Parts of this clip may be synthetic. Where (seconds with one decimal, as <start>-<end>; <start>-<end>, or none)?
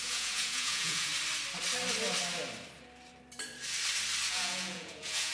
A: 0.0-1.1; 4.3-5.3